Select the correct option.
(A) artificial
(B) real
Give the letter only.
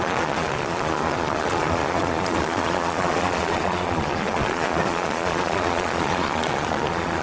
A